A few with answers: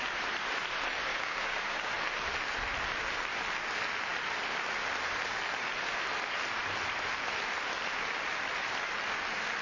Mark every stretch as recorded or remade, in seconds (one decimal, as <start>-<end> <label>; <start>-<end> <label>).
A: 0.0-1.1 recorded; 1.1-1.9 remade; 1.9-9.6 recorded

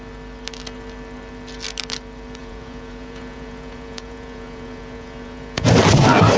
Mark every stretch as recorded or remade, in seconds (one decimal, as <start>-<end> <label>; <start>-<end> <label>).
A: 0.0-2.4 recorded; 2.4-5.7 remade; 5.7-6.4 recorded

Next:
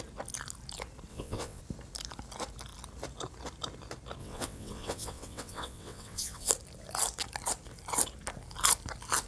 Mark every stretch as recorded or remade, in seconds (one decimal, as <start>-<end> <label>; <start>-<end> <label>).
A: 0.0-1.1 recorded; 1.1-1.6 remade; 1.6-4.2 recorded; 4.2-6.5 remade; 6.5-9.3 recorded

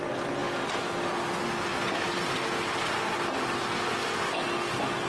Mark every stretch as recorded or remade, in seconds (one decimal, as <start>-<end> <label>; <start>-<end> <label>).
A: 0.0-5.1 recorded